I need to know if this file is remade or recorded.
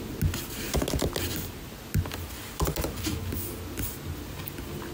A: recorded